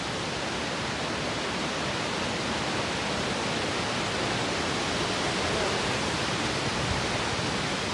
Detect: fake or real real